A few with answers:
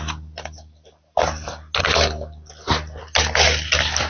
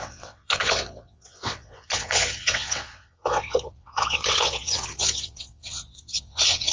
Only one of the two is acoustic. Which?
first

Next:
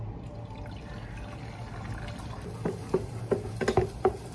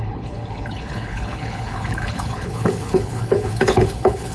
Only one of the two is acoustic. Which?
first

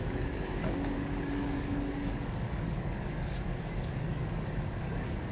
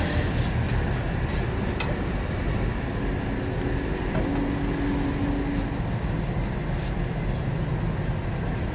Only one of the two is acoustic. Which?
second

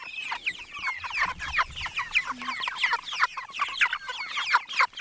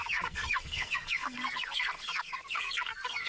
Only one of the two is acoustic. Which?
first